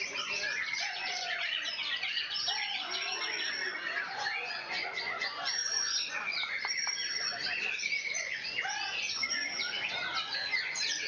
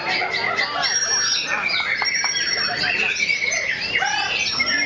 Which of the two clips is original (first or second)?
second